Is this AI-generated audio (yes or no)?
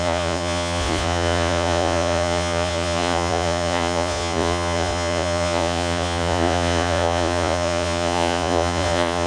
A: yes